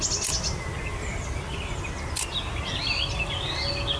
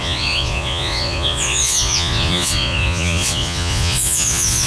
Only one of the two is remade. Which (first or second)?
second